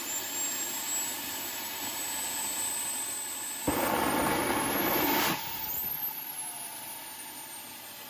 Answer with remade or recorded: recorded